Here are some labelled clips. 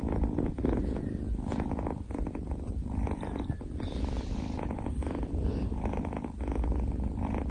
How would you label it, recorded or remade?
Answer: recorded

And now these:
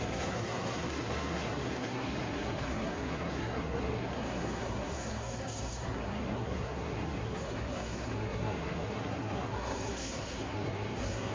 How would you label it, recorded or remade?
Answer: remade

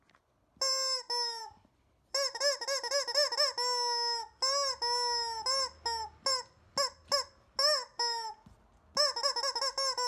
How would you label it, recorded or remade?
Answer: recorded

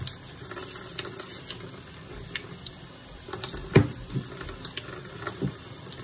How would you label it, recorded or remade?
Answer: recorded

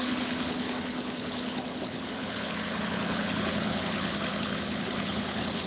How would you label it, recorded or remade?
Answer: remade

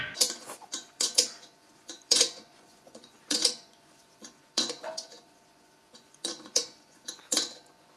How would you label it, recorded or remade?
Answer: remade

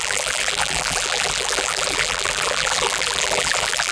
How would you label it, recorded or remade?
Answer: remade